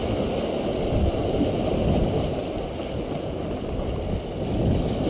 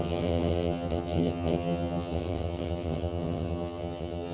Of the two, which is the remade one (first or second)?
second